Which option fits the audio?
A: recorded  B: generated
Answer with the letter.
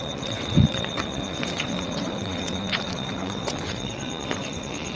B